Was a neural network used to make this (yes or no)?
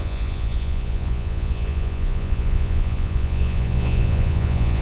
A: yes